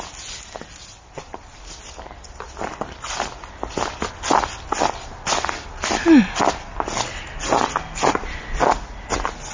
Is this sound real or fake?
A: real